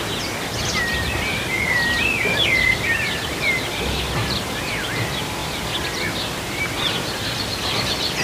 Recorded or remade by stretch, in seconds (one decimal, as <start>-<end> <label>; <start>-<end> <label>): 0.0-8.2 recorded